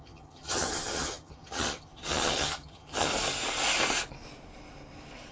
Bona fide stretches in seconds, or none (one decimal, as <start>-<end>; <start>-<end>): 3.1-5.3